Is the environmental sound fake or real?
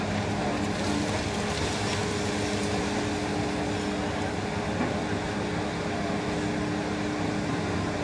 real